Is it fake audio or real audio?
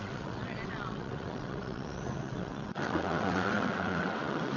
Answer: fake